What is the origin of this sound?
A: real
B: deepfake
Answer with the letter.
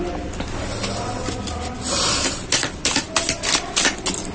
A